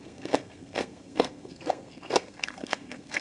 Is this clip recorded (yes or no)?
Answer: no